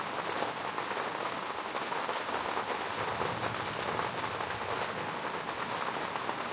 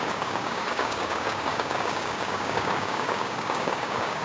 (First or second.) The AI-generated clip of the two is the second